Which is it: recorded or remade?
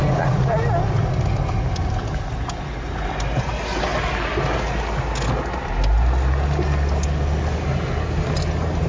recorded